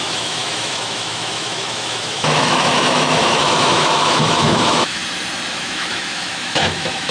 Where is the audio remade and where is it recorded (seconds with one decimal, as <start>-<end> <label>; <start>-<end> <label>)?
0.0-5.0 remade; 5.0-5.5 recorded; 5.5-7.1 remade